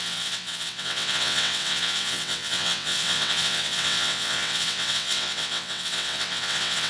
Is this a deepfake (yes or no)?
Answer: yes